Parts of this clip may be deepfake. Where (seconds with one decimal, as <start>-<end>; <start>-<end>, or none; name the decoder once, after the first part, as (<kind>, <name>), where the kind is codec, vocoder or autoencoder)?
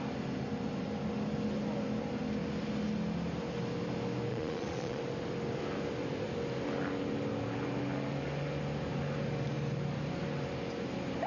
4.3-5.0 (vocoder, Vocos)